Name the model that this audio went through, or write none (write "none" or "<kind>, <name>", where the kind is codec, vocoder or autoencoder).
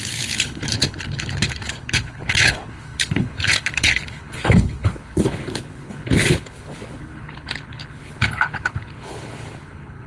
codec, HILCodec